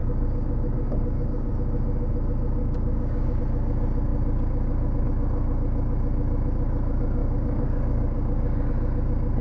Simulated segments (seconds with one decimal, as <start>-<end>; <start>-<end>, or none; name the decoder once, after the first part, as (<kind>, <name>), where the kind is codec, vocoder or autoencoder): 0.0-1.5 (codec, DAC); 2.6-3.4; 7.2-8.7